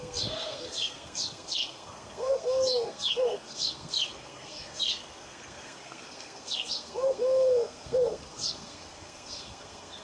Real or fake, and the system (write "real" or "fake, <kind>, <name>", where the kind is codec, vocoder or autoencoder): fake, codec, SNAC